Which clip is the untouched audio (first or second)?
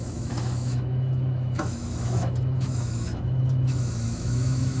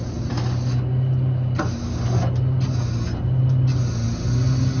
second